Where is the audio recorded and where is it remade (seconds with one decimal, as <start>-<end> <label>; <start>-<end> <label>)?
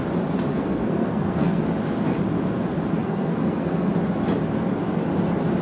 0.0-0.5 recorded; 0.5-1.6 remade; 1.6-3.0 recorded; 3.0-3.9 remade; 3.9-5.6 recorded